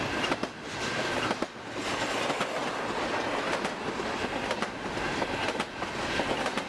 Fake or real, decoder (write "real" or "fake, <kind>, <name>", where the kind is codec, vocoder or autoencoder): real